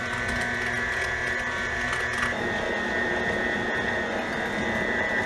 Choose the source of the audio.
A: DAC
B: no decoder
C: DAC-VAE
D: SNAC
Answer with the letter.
B